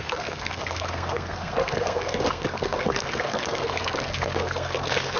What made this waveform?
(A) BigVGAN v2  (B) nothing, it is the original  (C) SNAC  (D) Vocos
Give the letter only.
C